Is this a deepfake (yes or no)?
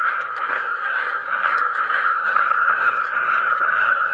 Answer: yes